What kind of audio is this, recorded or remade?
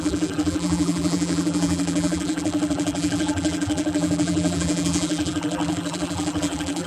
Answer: remade